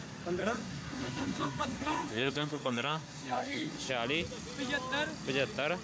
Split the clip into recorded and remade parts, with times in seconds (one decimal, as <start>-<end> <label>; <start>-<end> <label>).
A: 0.0-0.4 recorded; 0.4-3.9 remade; 3.9-5.8 recorded